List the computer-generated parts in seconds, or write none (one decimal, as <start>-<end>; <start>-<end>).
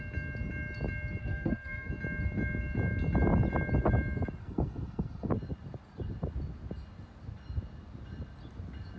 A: 1.2-1.9; 4.4-5.3